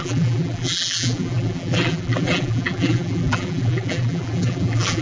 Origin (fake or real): fake